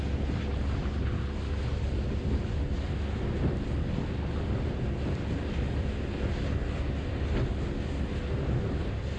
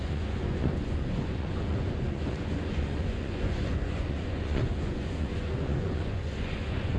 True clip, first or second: first